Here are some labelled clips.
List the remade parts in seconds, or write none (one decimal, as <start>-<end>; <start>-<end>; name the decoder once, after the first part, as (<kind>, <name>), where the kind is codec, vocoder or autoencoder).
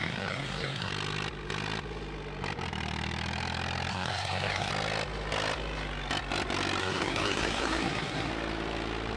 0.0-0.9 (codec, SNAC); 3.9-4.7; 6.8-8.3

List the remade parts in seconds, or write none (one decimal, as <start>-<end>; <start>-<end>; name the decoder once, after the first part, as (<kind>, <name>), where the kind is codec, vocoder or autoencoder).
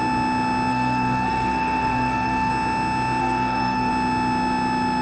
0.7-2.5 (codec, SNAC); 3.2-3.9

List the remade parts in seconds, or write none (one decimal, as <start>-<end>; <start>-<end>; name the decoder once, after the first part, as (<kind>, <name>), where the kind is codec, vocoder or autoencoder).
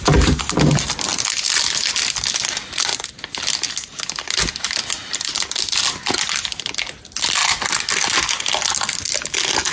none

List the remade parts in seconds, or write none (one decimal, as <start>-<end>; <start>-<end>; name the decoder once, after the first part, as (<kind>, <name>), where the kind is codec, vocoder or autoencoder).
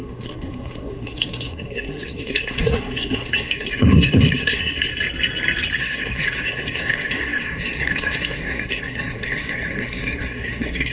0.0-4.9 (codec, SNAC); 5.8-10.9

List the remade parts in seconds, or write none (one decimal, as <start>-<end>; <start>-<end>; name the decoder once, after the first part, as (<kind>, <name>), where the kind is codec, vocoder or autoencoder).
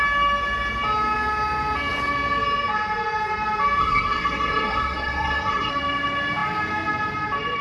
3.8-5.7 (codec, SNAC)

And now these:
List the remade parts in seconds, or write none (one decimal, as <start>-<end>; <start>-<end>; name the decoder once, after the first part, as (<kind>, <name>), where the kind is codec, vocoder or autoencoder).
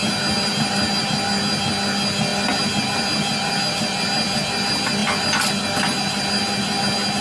none